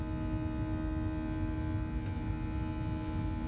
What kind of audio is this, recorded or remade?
recorded